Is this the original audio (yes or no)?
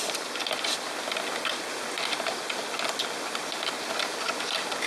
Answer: yes